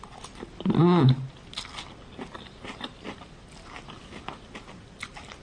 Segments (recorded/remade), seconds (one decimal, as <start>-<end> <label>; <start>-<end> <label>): 0.0-5.4 recorded